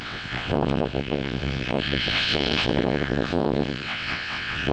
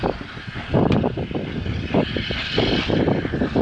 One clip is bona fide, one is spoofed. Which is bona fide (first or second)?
second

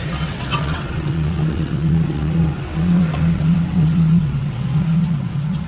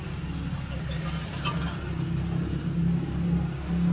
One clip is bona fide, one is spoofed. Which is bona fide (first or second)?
second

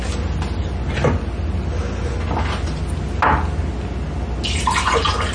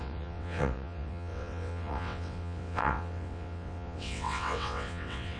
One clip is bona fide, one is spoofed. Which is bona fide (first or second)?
first